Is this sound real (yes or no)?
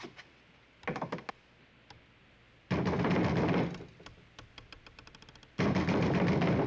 yes